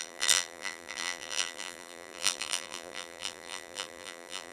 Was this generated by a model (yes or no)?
yes